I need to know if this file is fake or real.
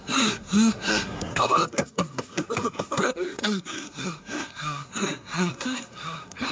fake